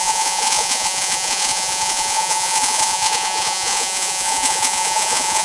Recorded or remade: remade